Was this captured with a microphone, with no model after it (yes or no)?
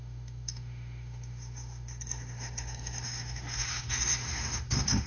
no